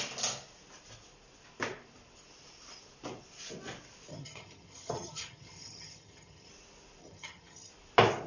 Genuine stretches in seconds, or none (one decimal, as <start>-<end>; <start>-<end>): 0.0-4.1; 6.5-7.0; 7.7-8.3